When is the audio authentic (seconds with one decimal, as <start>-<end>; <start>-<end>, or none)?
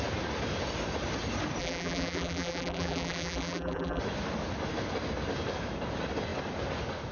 0.0-1.6; 4.0-7.1